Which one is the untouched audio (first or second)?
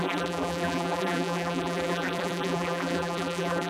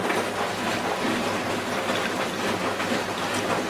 second